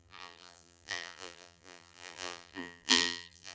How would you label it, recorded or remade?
remade